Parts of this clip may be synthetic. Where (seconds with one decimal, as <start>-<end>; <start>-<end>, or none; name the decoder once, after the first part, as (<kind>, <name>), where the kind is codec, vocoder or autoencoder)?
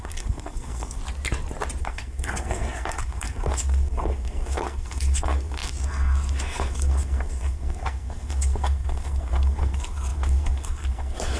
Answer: 0.0-1.0 (codec, SNAC); 1.8-11.4